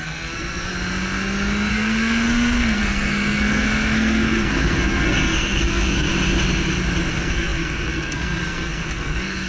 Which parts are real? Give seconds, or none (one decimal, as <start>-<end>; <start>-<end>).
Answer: 0.7-1.7; 6.1-7.1